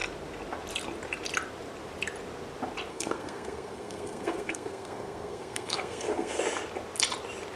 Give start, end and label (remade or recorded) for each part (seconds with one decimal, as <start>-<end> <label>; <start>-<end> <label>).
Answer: 0.0-2.9 recorded; 2.9-6.4 remade; 6.4-7.6 recorded